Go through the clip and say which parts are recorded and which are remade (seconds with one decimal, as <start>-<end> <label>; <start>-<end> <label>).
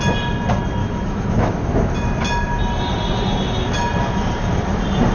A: 0.0-0.8 recorded; 0.8-1.5 remade; 1.5-5.1 recorded